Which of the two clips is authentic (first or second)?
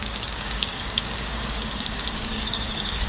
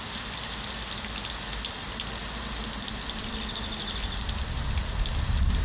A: second